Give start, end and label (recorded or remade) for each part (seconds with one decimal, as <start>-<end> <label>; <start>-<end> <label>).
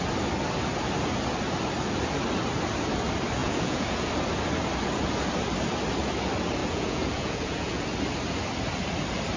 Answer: 0.0-3.4 recorded; 3.4-4.1 remade; 4.1-6.6 recorded; 6.6-7.8 remade; 7.8-9.4 recorded